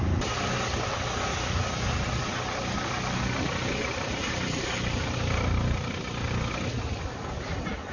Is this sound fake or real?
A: real